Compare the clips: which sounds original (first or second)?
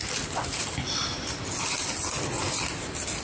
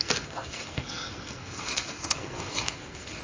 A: first